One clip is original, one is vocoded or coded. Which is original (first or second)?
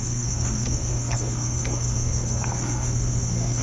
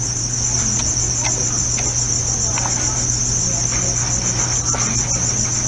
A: second